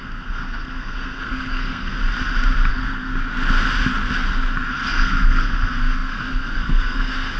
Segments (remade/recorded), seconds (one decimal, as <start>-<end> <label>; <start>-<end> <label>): 0.0-2.0 remade; 2.0-2.7 recorded; 2.7-3.1 remade; 3.1-4.9 recorded; 4.9-7.4 remade